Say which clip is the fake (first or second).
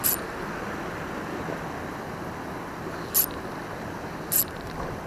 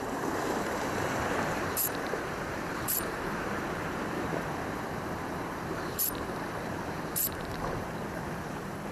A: second